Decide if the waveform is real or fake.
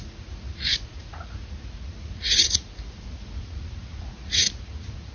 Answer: fake